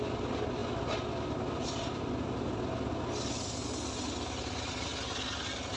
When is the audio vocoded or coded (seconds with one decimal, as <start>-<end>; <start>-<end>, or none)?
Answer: none